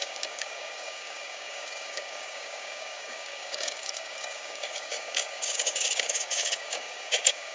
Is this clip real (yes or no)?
no